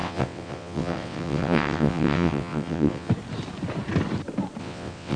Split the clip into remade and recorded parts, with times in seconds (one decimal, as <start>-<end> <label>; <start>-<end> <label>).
0.0-3.1 remade; 3.1-4.6 recorded; 4.6-5.2 remade

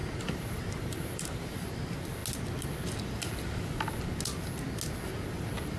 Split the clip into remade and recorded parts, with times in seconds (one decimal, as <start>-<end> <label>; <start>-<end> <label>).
0.0-1.7 remade; 1.7-5.8 recorded

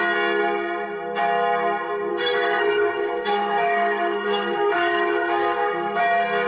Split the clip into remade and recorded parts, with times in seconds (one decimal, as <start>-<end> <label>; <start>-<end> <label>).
0.0-2.1 recorded; 2.1-6.0 remade; 6.0-6.5 recorded

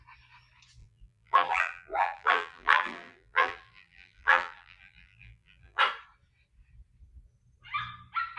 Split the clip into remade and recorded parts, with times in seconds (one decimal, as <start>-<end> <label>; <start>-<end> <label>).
0.0-0.8 recorded; 0.8-5.8 remade; 5.8-8.4 recorded

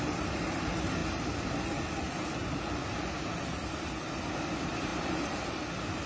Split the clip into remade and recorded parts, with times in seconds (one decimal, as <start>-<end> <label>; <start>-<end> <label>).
0.0-4.9 recorded; 4.9-5.6 remade; 5.6-6.1 recorded

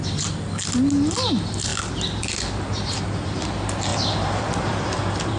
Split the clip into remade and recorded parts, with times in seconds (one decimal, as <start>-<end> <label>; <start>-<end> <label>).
0.0-3.9 recorded; 3.9-5.4 remade